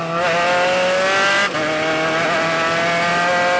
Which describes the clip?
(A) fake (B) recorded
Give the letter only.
B